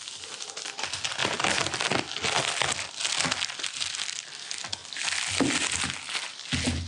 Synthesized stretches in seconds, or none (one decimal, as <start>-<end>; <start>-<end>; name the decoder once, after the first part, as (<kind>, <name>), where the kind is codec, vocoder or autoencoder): none